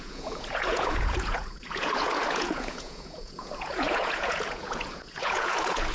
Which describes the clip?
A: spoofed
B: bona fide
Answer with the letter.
A